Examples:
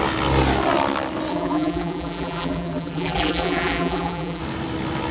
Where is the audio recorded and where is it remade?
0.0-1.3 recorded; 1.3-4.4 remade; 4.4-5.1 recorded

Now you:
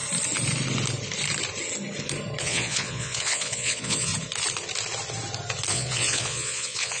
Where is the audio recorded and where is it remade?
0.0-2.4 recorded; 2.4-4.1 remade; 4.1-5.7 recorded; 5.7-7.0 remade